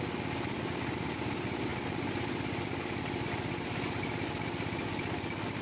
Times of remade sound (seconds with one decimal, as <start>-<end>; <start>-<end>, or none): none